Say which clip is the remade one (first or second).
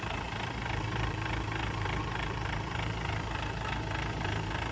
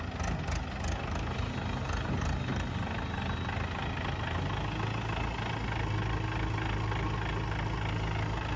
first